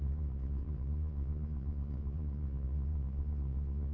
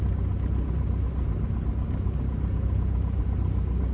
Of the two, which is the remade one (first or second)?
first